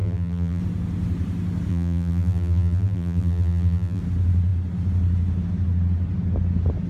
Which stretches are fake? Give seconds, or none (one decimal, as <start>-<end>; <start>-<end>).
0.0-0.6; 1.7-4.0